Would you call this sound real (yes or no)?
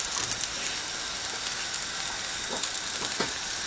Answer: yes